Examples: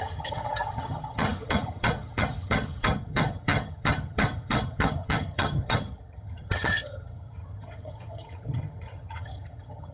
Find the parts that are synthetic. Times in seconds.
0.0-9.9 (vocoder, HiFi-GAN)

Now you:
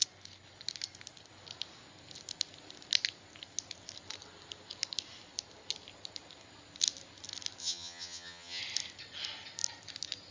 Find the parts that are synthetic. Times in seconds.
7.6-8.6 (vocoder, HiFi-GAN)

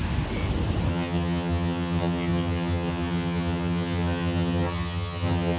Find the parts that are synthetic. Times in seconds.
0.9-5.6 (vocoder, HiFi-GAN)

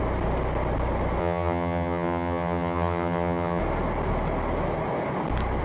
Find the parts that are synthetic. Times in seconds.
1.2-3.6 (vocoder, HiFi-GAN)

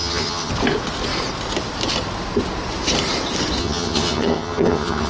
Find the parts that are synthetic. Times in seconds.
0.0-0.5 (vocoder, HiFi-GAN); 3.6-5.1